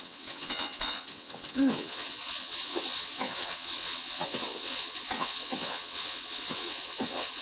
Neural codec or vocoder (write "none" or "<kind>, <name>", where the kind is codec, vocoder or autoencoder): vocoder, WaveNeXt